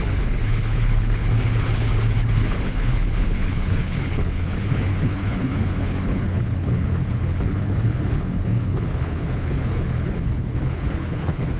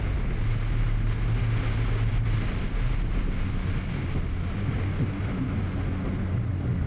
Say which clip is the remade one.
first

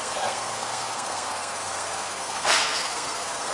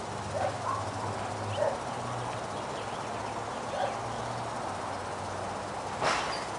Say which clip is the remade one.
first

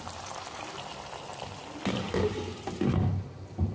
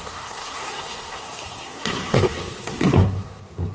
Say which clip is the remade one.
second